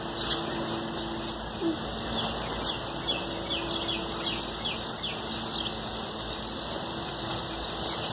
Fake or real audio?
real